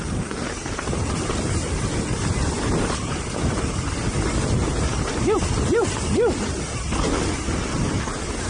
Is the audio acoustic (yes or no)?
yes